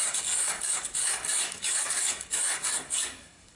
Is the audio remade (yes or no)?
yes